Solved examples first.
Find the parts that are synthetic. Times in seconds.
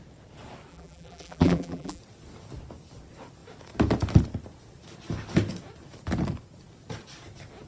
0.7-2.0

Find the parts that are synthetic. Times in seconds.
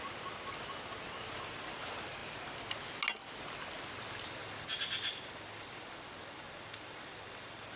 4.4-7.8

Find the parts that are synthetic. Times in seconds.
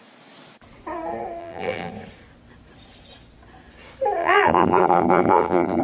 1.4-1.9; 4.2-5.8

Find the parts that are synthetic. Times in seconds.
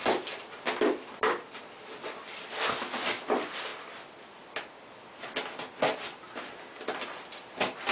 none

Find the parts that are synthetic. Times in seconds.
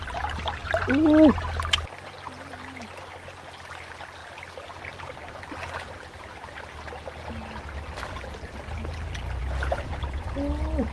none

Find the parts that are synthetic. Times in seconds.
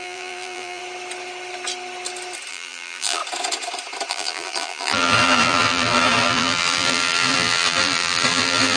0.0-0.8; 2.5-3.2; 4.1-8.8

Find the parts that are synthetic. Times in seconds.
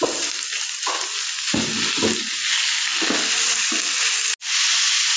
none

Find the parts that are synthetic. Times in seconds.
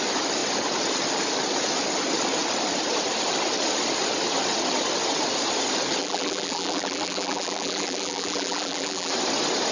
6.0-9.1